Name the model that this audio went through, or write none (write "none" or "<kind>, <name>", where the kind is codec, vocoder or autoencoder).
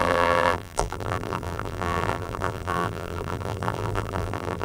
vocoder, BigVGAN v2